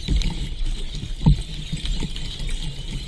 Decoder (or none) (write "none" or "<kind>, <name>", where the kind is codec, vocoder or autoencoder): none